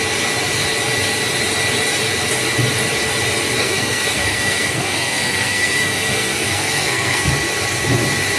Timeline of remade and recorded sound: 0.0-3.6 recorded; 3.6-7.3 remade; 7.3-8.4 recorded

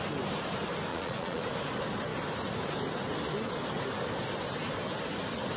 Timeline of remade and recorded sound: 0.0-0.9 recorded; 0.9-1.4 remade; 1.4-5.6 recorded

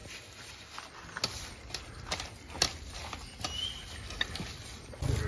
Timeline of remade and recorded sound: 0.0-5.3 recorded